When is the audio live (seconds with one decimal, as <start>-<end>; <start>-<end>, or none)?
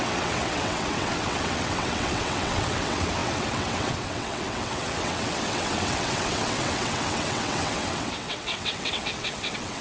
none